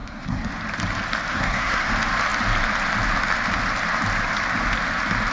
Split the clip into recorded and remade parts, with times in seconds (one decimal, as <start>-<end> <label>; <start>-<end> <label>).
0.0-0.5 remade; 0.5-1.3 recorded; 1.3-1.9 remade; 1.9-5.3 recorded